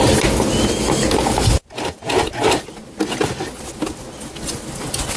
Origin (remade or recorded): recorded